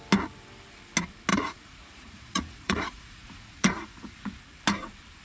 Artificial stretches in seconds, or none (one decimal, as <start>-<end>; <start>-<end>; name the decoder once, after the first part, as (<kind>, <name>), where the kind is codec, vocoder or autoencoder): 1.3-4.4 (vocoder, Vocos)